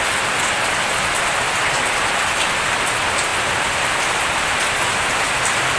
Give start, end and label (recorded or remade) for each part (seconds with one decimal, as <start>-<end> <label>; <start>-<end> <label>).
0.0-5.8 recorded